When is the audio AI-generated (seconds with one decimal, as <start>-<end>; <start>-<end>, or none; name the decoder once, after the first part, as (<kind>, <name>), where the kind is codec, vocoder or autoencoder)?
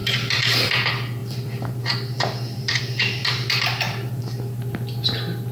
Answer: 0.0-0.7 (vocoder, BigVGAN v2); 1.2-4.2